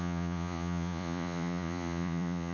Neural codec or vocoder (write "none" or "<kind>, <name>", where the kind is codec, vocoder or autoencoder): vocoder, Vocos